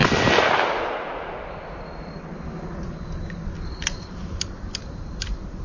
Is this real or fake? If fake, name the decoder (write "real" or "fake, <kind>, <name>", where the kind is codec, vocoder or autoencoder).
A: real